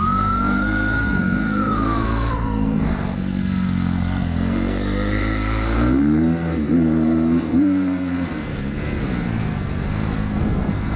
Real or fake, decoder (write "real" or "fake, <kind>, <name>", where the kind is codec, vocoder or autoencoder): fake, codec, SNAC